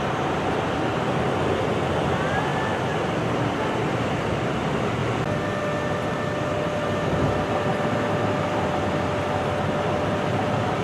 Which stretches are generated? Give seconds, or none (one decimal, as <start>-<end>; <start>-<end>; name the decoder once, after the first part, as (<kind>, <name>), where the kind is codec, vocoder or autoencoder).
2.5-3.6 (vocoder, BigVGAN v2)